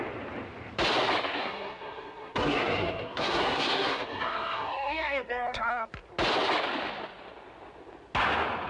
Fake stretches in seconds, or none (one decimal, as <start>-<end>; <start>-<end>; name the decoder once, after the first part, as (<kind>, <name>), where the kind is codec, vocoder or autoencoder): 1.2-5.9 (codec, SNAC)